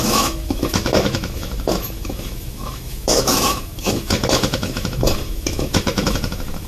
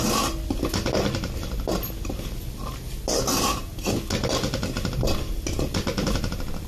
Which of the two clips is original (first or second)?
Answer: second